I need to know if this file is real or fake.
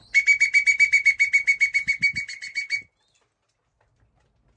real